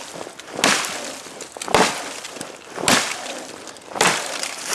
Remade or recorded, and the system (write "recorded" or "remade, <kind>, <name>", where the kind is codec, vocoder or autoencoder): recorded